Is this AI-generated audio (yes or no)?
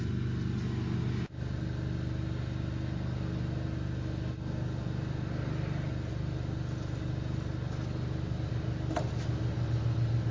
no